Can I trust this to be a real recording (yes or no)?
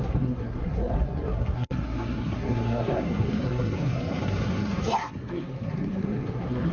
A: no